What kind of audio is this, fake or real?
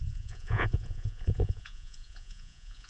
fake